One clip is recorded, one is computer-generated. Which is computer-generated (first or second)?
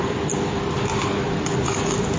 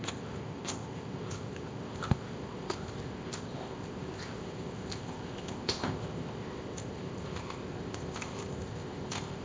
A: second